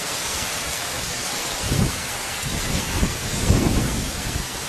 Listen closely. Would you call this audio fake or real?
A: fake